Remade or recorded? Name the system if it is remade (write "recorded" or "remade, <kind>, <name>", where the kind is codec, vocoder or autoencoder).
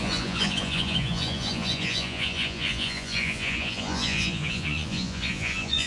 remade, vocoder, Vocos